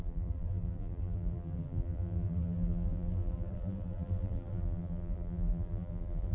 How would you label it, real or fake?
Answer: fake